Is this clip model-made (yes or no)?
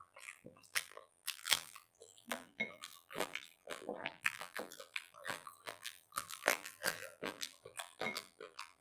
yes